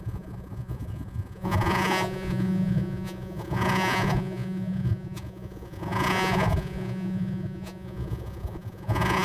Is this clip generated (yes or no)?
yes